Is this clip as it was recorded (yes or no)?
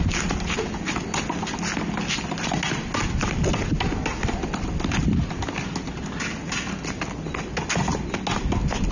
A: yes